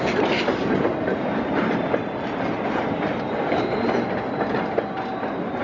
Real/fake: real